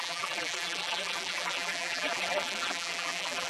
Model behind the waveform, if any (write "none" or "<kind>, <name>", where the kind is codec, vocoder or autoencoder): vocoder, BigVGAN v2